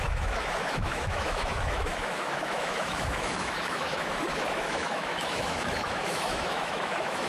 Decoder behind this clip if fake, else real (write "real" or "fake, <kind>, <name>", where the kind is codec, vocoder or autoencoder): fake, autoencoder, DAC-VAE